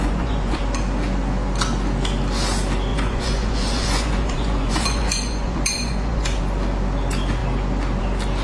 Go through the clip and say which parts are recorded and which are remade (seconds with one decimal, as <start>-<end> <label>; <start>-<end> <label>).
0.0-0.6 remade; 0.6-2.9 recorded; 2.9-6.4 remade; 6.4-8.4 recorded